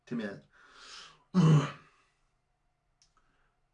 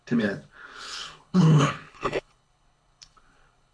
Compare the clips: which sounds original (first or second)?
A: first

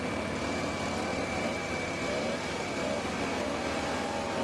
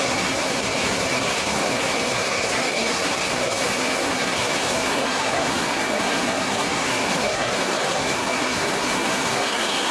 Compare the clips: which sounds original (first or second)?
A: first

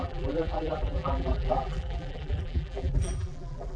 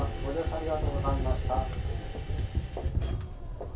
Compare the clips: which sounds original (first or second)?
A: second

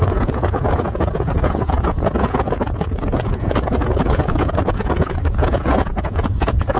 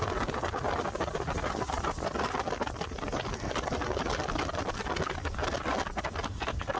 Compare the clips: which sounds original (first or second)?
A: second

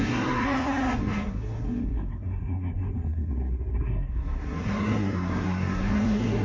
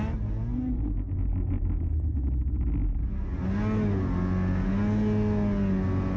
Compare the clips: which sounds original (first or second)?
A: second